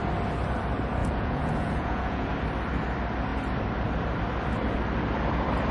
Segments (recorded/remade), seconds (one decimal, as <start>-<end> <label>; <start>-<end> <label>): 0.0-1.0 recorded; 1.0-2.3 remade; 2.3-5.7 recorded